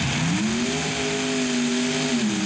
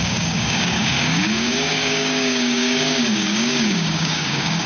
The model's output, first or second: second